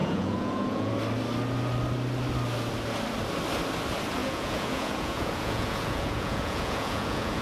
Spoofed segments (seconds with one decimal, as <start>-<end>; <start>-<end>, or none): 0.0-0.9; 4.2-7.4